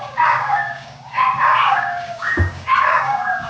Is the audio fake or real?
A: fake